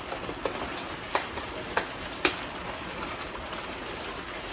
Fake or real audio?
real